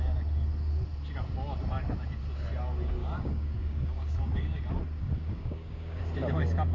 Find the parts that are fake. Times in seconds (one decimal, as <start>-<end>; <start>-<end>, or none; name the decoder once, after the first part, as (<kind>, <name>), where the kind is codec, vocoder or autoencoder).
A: 3.0-4.6 (codec, DAC); 5.0-6.0